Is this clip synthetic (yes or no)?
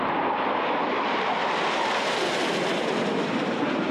no